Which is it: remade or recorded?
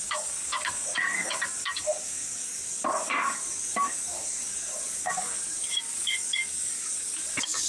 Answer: remade